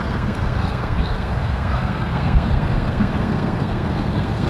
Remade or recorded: remade